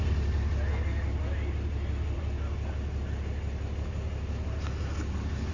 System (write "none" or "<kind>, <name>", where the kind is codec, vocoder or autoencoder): vocoder, BigVGAN v2